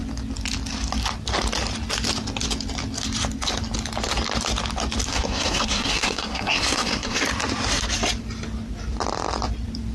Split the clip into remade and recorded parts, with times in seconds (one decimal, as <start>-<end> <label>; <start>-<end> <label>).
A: 0.0-5.1 recorded; 5.1-7.2 remade; 7.2-9.9 recorded

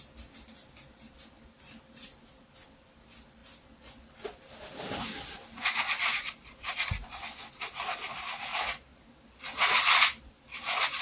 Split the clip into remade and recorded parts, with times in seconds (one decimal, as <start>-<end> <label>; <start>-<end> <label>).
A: 0.0-11.0 recorded

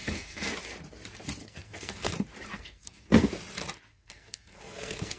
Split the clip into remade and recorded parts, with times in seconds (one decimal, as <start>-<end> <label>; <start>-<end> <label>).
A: 0.0-0.5 remade; 0.5-1.4 recorded; 1.4-2.1 remade; 2.1-2.5 recorded; 2.5-3.3 remade; 3.3-3.9 recorded; 3.9-5.2 remade

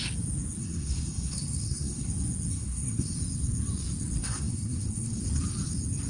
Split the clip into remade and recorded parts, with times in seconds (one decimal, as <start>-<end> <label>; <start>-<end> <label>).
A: 0.0-0.6 recorded; 0.6-2.1 remade; 2.1-2.5 recorded; 2.5-3.1 remade; 3.1-4.2 recorded; 4.2-5.2 remade; 5.2-6.1 recorded

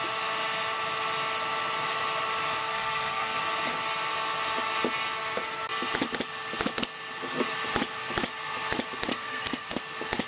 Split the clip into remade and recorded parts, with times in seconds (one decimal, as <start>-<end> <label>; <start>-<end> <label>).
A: 0.0-2.6 recorded; 2.6-3.4 remade; 3.4-9.1 recorded; 9.1-9.8 remade; 9.8-10.3 recorded

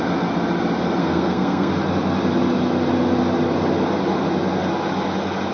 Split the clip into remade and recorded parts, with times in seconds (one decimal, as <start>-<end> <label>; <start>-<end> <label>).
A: 0.0-1.0 recorded; 1.0-1.7 remade; 1.7-5.5 recorded